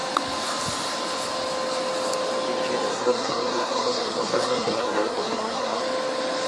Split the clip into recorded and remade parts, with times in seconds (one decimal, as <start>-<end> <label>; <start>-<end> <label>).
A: 0.0-2.9 recorded; 2.9-5.8 remade; 5.8-6.5 recorded